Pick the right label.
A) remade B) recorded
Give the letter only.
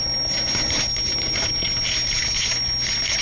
B